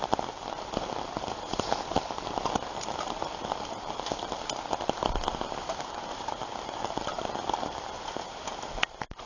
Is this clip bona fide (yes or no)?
yes